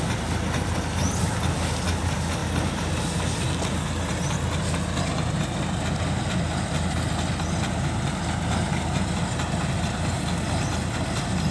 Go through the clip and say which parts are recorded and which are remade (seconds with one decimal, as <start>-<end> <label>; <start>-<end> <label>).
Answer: 0.0-11.5 recorded